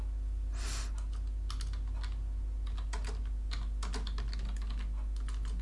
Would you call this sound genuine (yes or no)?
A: yes